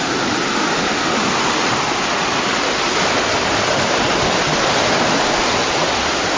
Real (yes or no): yes